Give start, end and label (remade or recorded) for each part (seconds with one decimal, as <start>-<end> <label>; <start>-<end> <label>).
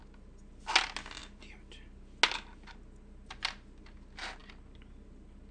0.0-5.5 recorded